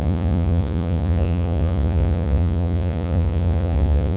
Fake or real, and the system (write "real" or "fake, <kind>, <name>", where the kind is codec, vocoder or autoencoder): fake, vocoder, Vocos